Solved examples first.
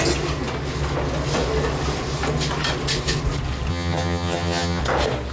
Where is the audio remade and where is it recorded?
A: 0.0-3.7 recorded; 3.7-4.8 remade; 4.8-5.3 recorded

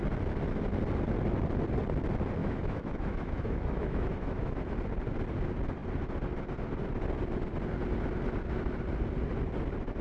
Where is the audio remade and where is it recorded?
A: 0.0-2.4 recorded; 2.4-4.6 remade; 4.6-10.0 recorded

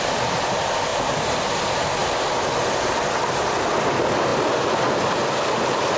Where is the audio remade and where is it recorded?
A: 0.0-6.0 recorded

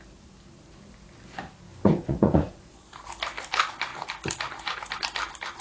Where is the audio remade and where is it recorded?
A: 0.0-1.7 recorded; 1.7-2.9 remade; 2.9-5.6 recorded

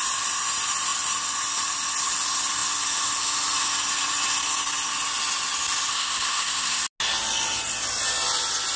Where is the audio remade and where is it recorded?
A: 0.0-5.9 recorded; 5.9-6.8 remade; 6.8-8.8 recorded

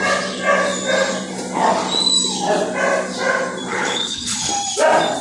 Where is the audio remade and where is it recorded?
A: 0.0-3.7 recorded; 3.7-4.5 remade; 4.5-5.2 recorded

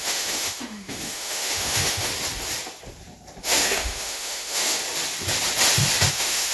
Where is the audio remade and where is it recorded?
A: 0.0-2.1 remade; 2.1-3.4 recorded; 3.4-4.8 remade; 4.8-6.1 recorded; 6.1-6.5 remade